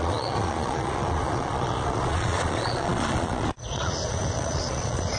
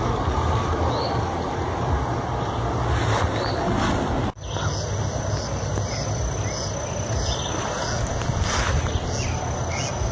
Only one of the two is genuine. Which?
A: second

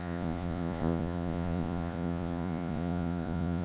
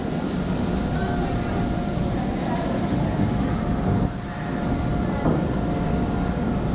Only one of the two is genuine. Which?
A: second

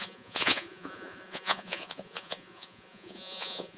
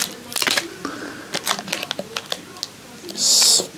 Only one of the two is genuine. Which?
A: second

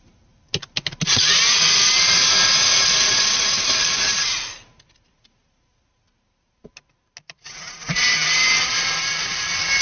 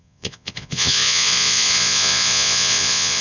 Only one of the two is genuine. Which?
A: first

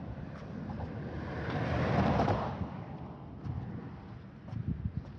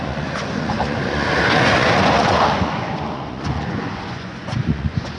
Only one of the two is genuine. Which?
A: first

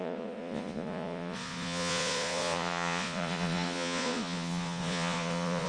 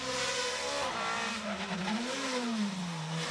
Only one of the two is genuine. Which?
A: second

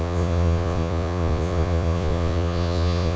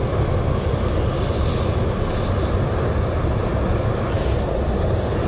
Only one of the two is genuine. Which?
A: second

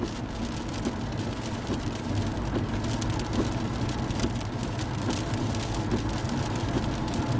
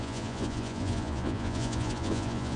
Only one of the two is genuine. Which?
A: first